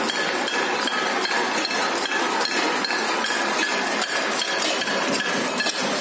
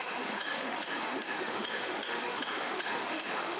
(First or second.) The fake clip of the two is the second